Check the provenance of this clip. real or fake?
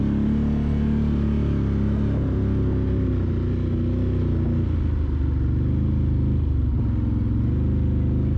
real